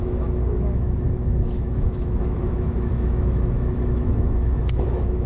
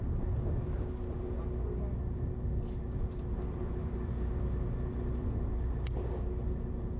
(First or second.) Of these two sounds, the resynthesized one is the first